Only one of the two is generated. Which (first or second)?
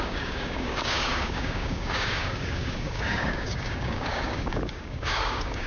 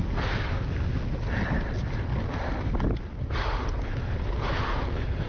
first